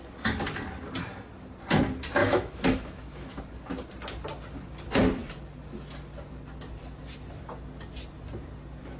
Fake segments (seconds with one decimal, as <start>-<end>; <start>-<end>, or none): 2.2-3.4